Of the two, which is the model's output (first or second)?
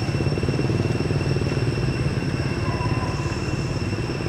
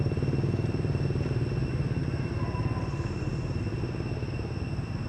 first